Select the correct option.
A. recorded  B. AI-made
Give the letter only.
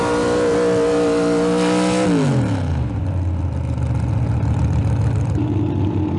A